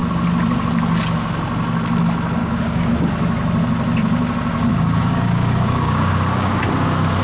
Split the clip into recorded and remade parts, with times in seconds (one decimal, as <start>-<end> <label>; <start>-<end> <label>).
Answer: 0.0-2.4 recorded; 2.4-3.1 remade; 3.1-4.7 recorded; 4.7-6.6 remade; 6.6-7.2 recorded